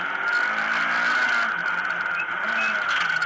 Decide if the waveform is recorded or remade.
recorded